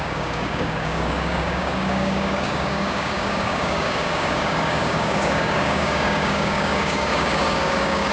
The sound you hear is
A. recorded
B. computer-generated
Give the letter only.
B